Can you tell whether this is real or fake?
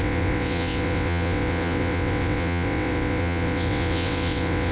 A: fake